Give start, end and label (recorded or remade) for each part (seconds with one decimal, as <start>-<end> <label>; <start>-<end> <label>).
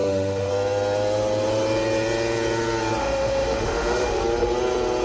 0.0-0.5 remade; 0.5-3.0 recorded; 3.0-4.2 remade; 4.2-5.0 recorded